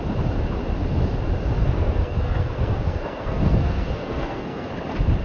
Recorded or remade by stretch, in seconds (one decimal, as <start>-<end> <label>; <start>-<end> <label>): 0.0-1.6 recorded; 1.6-4.7 remade; 4.7-5.2 recorded